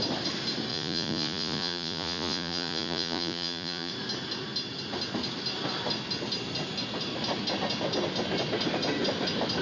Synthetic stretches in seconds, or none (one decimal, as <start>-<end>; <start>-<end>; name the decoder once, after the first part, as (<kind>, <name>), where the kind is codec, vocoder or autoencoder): 0.7-3.9 (vocoder, Vocos)